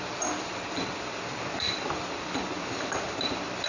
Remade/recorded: remade